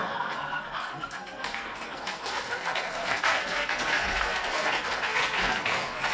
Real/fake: fake